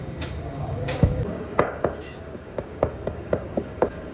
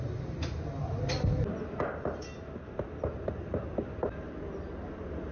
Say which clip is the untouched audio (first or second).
second